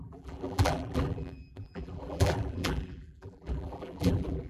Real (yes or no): no